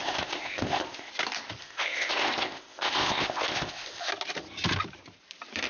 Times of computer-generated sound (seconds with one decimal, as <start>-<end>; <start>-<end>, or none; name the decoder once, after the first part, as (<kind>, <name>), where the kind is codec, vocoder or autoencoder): 0.0-1.1 (codec, ZipCodec); 1.6-4.1

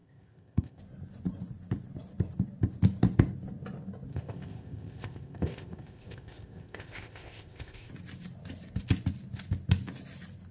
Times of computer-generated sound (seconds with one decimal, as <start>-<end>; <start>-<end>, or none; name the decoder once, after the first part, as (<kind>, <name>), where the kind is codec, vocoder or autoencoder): 0.0-0.8 (codec, ZipCodec); 4.1-7.9

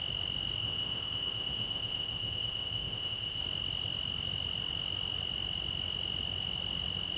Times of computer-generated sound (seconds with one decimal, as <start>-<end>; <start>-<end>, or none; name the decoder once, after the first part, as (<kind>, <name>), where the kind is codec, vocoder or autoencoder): 0.6-3.4 (codec, ZipCodec)